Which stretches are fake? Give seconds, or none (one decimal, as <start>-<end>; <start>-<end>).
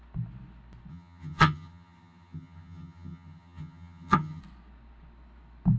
0.9-4.4